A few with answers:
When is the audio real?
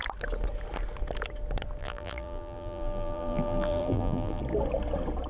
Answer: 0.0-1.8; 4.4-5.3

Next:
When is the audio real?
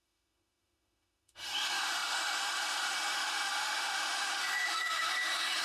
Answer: none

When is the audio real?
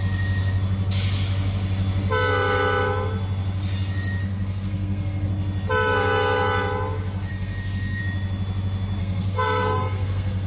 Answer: 0.0-4.2; 5.3-7.3; 8.0-9.0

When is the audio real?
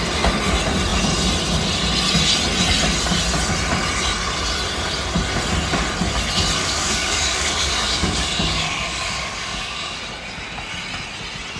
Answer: 0.0-6.6; 10.0-11.6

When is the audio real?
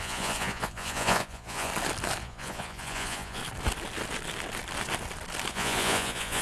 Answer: 1.7-2.2; 3.4-5.5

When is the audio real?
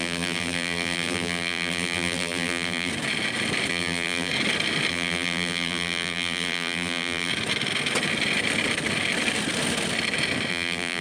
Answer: 2.9-3.7; 4.3-4.9; 7.3-10.5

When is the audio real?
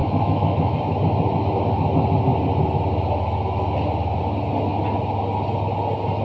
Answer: 0.8-6.2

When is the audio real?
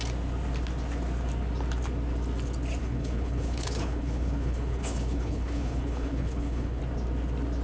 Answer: 0.0-2.8; 6.8-7.6